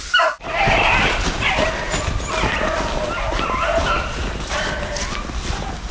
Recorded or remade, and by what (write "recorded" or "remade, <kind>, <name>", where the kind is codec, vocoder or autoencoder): recorded